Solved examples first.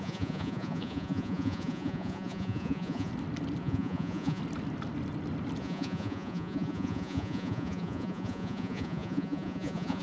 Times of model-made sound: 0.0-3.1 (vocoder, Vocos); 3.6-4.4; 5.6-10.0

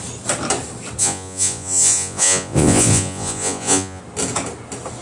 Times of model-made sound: 1.0-4.0 (vocoder, Vocos)

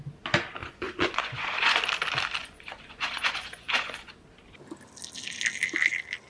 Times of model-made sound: 0.6-1.8 (vocoder, Vocos); 2.4-4.1

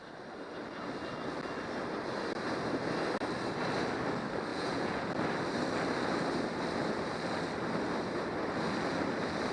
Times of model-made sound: 4.5-5.1 (vocoder, Vocos)

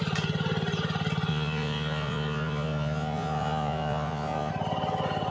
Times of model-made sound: 1.3-4.5 (vocoder, Vocos)

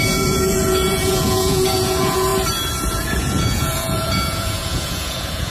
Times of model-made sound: 0.0-2.3 (vocoder, Vocos); 2.9-5.5

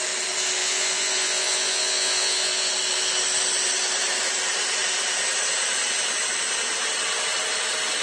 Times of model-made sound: 0.6-2.7 (vocoder, Vocos)